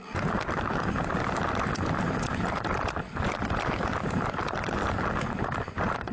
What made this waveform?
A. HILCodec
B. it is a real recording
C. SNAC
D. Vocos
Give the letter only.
B